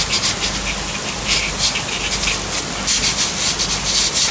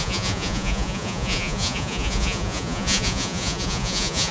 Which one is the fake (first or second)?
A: second